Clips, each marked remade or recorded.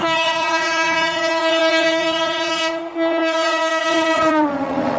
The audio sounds remade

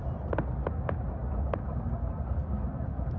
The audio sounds recorded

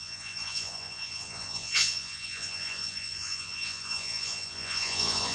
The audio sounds remade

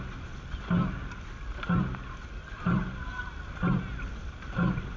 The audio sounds recorded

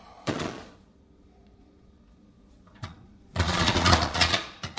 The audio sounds remade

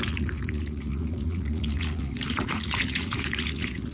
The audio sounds remade